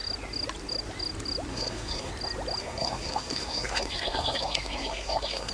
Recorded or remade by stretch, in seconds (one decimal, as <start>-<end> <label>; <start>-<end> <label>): 0.0-1.5 recorded; 1.5-2.1 remade; 2.1-2.6 recorded; 2.6-5.5 remade

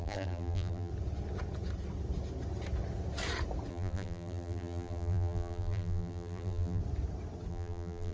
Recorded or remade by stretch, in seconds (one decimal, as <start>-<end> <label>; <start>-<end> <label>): 0.0-0.9 remade; 0.9-3.7 recorded; 3.7-6.8 remade; 6.8-7.5 recorded; 7.5-8.1 remade

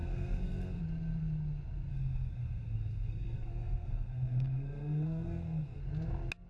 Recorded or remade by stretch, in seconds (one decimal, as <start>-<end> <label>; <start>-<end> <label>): 0.0-0.8 remade; 0.8-1.9 recorded; 1.9-5.8 remade; 5.8-6.5 recorded